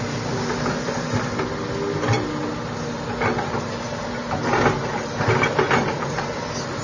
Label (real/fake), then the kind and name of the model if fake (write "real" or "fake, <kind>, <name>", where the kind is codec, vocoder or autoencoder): real